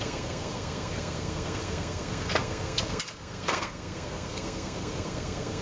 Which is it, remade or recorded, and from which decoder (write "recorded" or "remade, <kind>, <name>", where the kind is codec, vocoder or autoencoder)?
remade, codec, SNAC